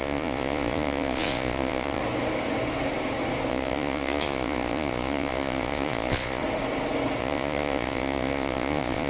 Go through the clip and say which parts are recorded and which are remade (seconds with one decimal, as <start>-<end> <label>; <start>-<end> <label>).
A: 0.0-2.0 remade; 2.0-3.5 recorded; 3.5-6.4 remade; 6.4-7.2 recorded; 7.2-9.1 remade